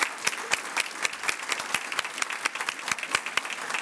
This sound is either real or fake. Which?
real